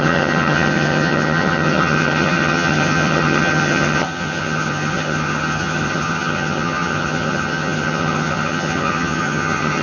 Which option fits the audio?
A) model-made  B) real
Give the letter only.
A